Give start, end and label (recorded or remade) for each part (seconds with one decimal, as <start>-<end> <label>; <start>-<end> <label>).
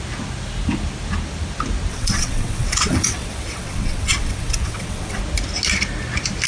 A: 0.0-1.9 recorded; 1.9-5.2 remade; 5.2-6.5 recorded